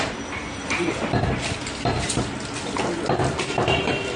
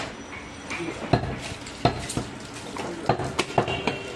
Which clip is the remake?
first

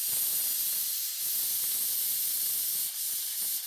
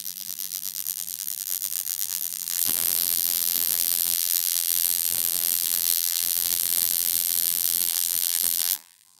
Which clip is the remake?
second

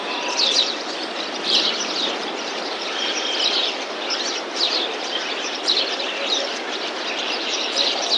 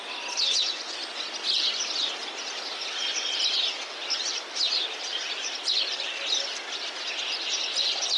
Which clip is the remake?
first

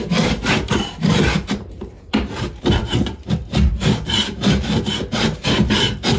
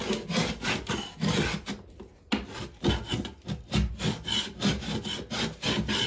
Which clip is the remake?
first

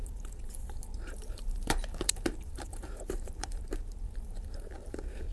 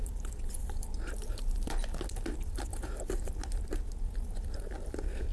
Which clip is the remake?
first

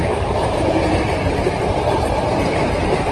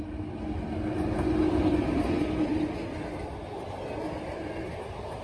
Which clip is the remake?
first